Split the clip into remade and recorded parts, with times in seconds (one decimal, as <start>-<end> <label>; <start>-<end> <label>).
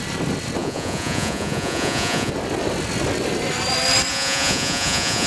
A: 0.0-0.6 recorded; 0.6-2.3 remade; 2.3-4.1 recorded; 4.1-5.3 remade